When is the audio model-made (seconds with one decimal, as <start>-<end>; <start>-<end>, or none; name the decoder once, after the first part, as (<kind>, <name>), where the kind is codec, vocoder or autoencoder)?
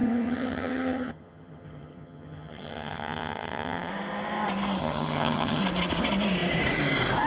0.0-3.9 (vocoder, HiFi-GAN); 4.8-5.6